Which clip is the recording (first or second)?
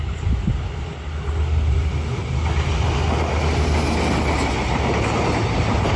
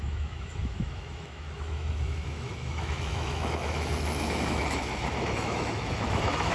first